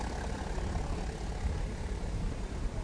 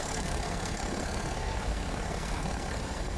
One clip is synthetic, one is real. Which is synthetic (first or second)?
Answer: second